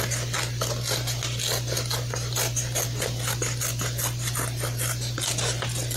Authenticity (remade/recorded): recorded